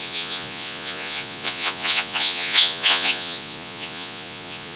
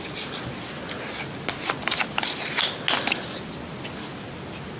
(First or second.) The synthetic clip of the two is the first